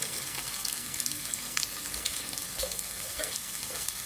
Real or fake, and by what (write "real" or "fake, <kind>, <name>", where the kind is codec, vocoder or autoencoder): fake, codec, SNAC